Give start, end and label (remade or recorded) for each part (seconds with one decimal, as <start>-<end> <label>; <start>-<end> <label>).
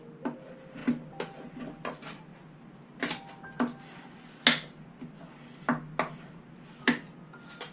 0.0-7.7 recorded